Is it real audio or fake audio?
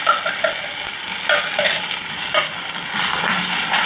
real